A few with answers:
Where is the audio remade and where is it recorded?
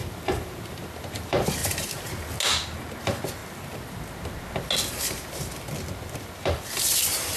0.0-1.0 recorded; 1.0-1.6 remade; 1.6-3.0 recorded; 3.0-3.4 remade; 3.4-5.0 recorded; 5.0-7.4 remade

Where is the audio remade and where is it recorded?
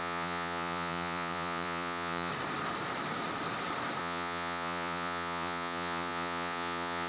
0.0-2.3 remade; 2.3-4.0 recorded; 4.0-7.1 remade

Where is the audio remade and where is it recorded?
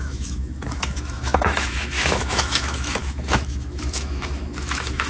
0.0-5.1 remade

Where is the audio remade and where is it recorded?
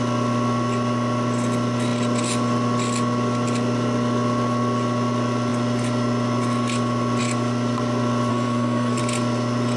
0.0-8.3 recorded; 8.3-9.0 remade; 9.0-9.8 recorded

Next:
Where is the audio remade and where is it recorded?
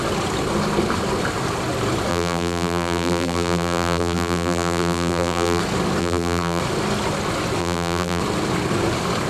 0.0-2.1 recorded; 2.1-5.6 remade; 5.6-6.0 recorded; 6.0-6.6 remade; 6.6-7.6 recorded; 7.6-8.2 remade; 8.2-9.3 recorded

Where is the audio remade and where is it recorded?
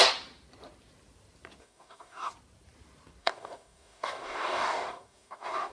0.0-1.6 recorded; 1.6-2.3 remade; 2.3-3.2 recorded; 3.2-5.7 remade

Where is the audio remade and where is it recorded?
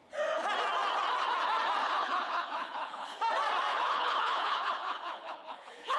0.0-1.8 recorded; 1.8-3.2 remade; 3.2-3.7 recorded; 3.7-6.0 remade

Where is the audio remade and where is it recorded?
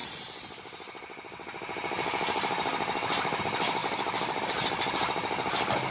0.0-5.9 recorded